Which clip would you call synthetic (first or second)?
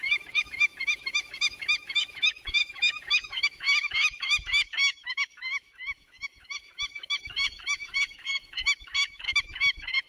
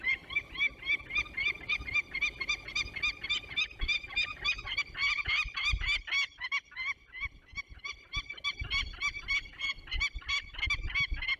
first